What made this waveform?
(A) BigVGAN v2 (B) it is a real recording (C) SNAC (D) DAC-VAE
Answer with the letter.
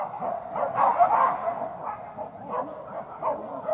B